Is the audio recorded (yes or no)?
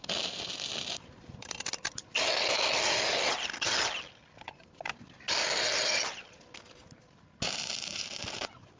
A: yes